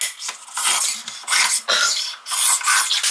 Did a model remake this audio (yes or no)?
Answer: no